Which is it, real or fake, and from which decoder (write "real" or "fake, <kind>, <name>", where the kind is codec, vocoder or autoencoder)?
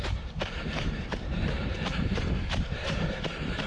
fake, vocoder, BigVGAN v2